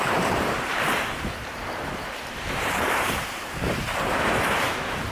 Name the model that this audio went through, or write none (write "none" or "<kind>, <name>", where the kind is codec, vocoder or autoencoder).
vocoder, BigVGAN v2